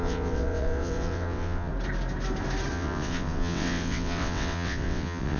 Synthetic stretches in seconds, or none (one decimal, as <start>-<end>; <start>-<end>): 0.0-1.7; 2.7-5.4